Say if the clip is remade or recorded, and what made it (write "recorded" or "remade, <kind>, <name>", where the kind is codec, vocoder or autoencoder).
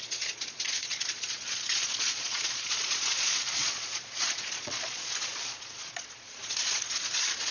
remade, vocoder, Vocos